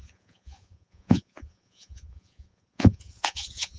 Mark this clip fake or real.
fake